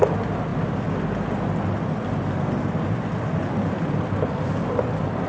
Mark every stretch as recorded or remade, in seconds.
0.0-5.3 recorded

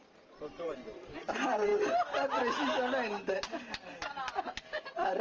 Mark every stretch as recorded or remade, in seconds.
0.0-1.7 remade; 1.7-4.8 recorded; 4.8-5.2 remade

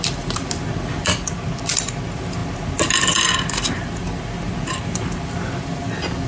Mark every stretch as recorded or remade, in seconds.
0.0-6.3 recorded

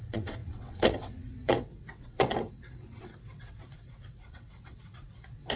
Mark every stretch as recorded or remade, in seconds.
0.0-5.6 remade

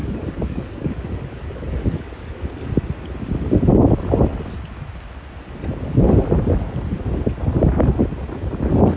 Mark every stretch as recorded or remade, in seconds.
0.0-2.7 remade; 2.7-9.0 recorded

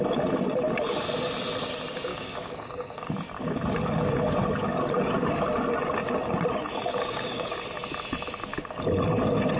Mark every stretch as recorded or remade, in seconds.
0.0-2.1 recorded; 2.1-3.1 remade; 3.1-6.9 recorded; 6.9-7.5 remade; 7.5-9.6 recorded

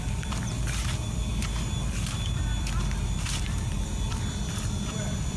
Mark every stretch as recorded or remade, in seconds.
0.0-1.3 remade; 1.3-3.4 recorded; 3.4-5.4 remade

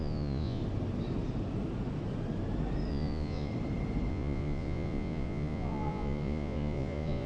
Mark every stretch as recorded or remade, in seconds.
0.0-0.6 remade; 0.6-2.9 recorded; 2.9-3.5 remade; 3.5-4.1 recorded; 4.1-7.3 remade